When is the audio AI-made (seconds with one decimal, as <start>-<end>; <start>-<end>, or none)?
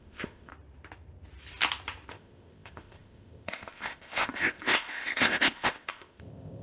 0.0-0.5; 2.1-6.6